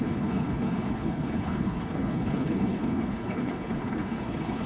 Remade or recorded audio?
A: remade